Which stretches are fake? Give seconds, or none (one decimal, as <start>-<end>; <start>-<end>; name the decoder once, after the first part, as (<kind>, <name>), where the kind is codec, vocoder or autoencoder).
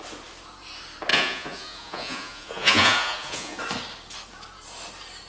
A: 1.1-3.6 (vocoder, Vocos)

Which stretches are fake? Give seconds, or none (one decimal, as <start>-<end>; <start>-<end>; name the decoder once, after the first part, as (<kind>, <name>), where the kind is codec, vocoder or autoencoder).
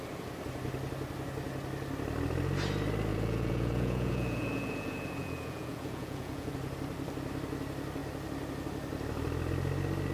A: 3.1-6.5 (vocoder, Vocos)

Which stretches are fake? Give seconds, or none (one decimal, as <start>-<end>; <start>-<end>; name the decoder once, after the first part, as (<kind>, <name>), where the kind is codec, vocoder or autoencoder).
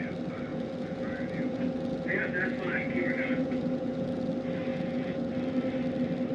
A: 0.5-4.3 (vocoder, Vocos); 4.7-5.3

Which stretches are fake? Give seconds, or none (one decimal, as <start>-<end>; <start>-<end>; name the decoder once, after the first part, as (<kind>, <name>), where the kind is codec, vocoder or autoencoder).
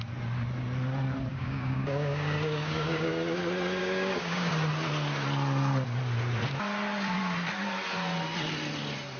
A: 1.3-3.1 (codec, DAC); 3.8-4.5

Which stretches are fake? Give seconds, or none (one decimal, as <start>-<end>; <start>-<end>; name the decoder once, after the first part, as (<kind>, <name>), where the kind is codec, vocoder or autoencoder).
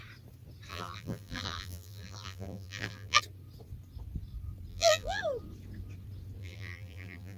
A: 0.7-3.2 (vocoder, BigVGAN v2); 4.7-5.2; 6.4-7.4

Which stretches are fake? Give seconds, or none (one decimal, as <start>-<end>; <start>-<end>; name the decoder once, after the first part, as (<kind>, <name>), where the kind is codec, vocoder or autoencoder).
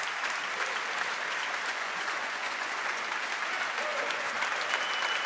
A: 1.7-3.0 (vocoder, Vocos); 3.9-4.4